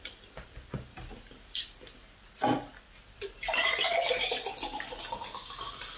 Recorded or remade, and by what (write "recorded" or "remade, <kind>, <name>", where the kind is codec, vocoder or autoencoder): recorded